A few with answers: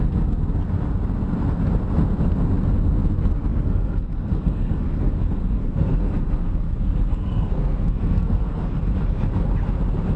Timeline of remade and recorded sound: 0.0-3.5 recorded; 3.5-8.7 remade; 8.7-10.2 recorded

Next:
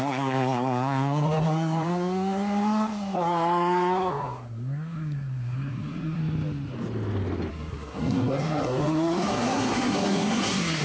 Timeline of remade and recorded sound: 0.0-6.2 remade; 6.2-7.5 recorded; 7.5-10.8 remade

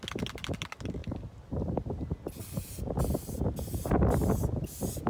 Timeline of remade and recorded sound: 0.0-5.1 recorded